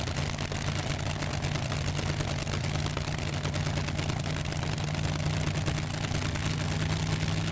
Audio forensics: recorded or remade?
recorded